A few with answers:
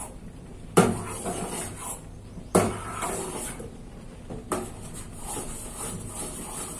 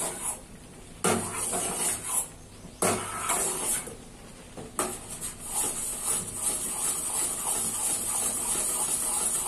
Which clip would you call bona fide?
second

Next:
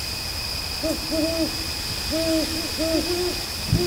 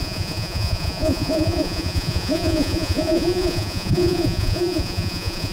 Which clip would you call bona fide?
first